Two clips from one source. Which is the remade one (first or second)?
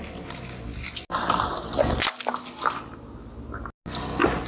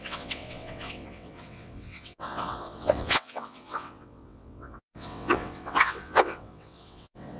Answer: second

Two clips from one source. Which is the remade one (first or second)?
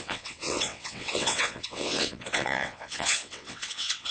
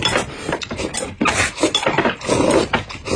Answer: first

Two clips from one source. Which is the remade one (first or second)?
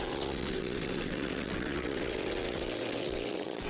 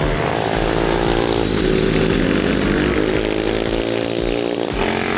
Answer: first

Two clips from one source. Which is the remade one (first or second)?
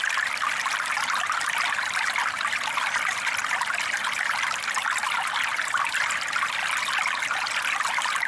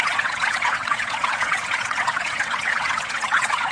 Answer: second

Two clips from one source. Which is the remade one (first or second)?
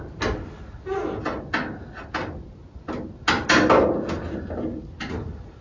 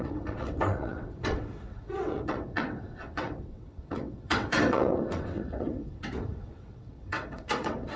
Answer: second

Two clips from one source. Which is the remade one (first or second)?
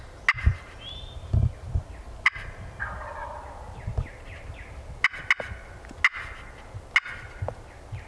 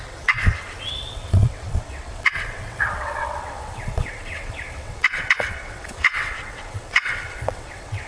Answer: second